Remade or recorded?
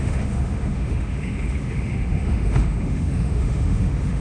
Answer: remade